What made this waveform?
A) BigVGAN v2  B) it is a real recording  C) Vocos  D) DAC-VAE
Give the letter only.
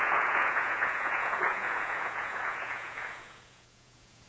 C